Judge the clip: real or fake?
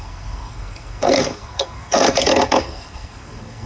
fake